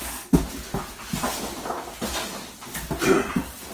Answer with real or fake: real